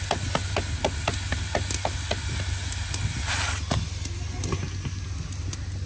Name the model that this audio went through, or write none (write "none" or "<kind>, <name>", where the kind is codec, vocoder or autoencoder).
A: none